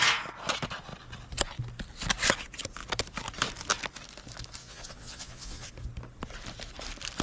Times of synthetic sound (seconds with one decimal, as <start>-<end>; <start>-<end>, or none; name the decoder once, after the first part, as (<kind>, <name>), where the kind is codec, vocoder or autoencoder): 4.6-5.7 (vocoder, Vocos)